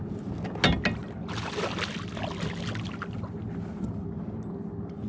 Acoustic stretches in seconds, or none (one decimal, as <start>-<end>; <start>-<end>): 0.0-5.1